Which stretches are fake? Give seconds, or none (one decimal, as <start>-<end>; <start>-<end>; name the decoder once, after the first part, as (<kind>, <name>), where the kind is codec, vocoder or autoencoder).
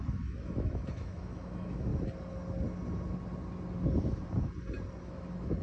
0.0-1.9 (autoencoder, DAC-VAE); 5.0-5.6